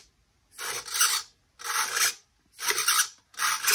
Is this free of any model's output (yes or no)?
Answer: yes